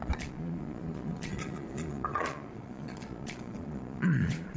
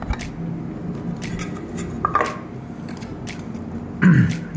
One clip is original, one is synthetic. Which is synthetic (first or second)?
first